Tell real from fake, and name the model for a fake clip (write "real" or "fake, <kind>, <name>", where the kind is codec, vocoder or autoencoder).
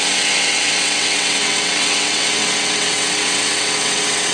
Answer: fake, vocoder, WaveNeXt